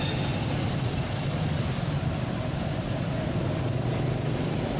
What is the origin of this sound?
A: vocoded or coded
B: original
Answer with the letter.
B